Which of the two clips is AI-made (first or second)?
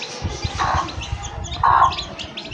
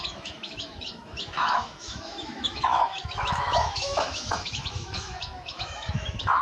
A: second